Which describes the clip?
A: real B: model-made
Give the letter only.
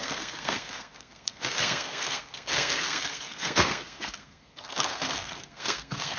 B